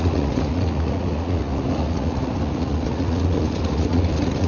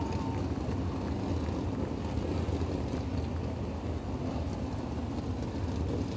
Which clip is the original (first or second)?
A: second